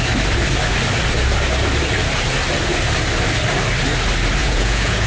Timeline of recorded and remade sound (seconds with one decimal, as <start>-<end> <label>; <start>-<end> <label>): 0.0-4.4 recorded; 4.4-5.1 remade